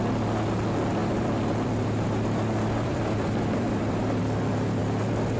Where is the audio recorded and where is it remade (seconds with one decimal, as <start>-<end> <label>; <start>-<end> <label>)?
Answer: 0.0-1.0 recorded; 1.0-4.2 remade; 4.2-4.8 recorded; 4.8-5.4 remade